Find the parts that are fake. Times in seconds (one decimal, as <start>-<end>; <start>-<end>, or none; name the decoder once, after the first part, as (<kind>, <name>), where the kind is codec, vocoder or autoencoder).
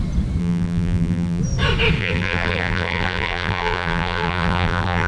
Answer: 0.4-1.4 (vocoder, BigVGAN v2); 2.0-5.1